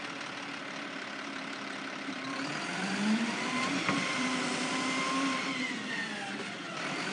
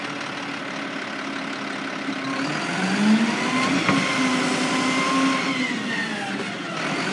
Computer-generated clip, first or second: first